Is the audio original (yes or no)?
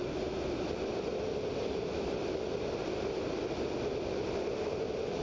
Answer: yes